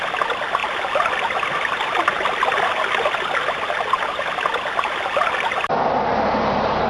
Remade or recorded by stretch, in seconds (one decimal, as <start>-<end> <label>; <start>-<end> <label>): 0.0-6.9 recorded